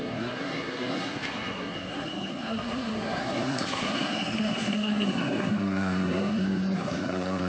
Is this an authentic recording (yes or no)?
no